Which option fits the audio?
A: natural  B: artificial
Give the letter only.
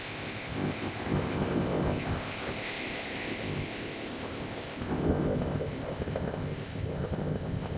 B